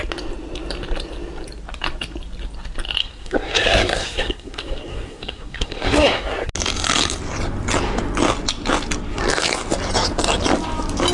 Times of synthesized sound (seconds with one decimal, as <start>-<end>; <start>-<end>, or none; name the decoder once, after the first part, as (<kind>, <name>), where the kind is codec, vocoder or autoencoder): 3.0-6.5 (codec, SNAC)